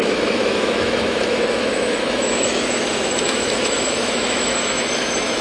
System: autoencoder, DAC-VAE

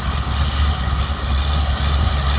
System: none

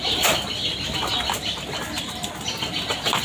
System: none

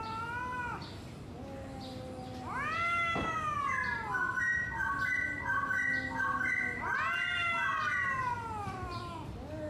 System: none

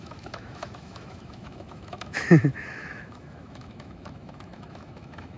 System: autoencoder, DAC-VAE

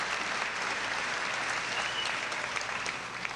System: none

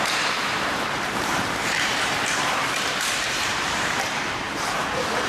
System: vocoder, BigVGAN v2